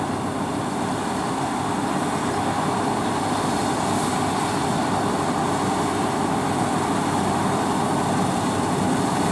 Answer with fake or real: real